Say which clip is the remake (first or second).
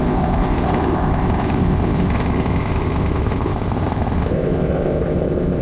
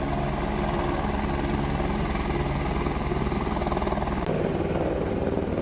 first